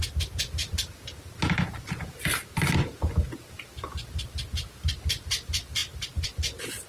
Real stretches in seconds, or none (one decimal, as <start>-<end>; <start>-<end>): 0.0-6.9